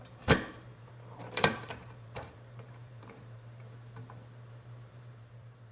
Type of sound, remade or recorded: remade